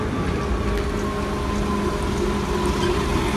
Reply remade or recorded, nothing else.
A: recorded